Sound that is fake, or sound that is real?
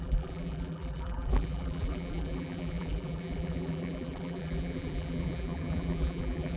fake